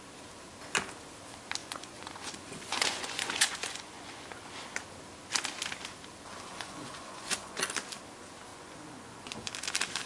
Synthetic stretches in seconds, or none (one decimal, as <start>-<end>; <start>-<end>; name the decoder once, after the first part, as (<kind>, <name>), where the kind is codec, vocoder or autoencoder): 1.6-4.5 (vocoder, Vocos); 6.5-7.6; 8.5-9.5